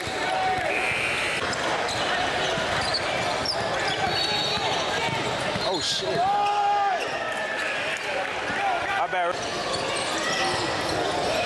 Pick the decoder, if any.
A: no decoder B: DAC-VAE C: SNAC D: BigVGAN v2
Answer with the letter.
A